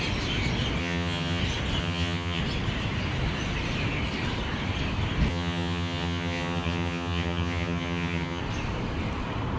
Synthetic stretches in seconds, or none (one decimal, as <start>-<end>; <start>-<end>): 0.8-1.4; 1.8-2.4; 5.3-8.4